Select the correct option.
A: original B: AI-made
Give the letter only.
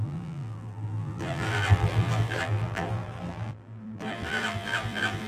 B